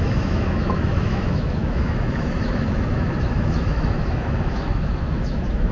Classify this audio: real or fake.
fake